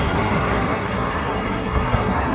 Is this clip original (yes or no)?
no